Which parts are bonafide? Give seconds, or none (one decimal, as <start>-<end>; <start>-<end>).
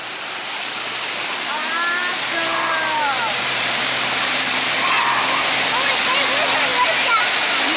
4.7-7.8